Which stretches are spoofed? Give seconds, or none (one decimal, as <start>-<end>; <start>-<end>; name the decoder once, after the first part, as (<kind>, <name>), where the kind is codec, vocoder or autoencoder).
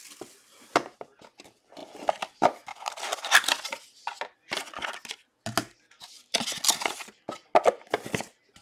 none